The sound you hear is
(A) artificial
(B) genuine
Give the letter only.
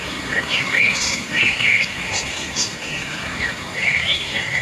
A